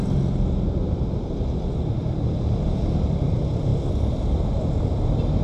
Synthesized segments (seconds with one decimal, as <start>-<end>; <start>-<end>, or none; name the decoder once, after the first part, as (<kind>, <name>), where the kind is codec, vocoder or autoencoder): 0.8-3.0 (vocoder, BigVGAN v2)